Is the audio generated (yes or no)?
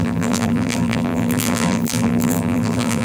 yes